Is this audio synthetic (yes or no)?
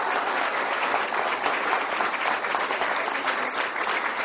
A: no